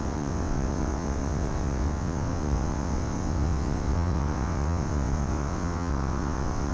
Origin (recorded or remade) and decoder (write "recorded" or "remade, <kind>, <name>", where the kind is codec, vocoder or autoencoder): remade, vocoder, WaveNeXt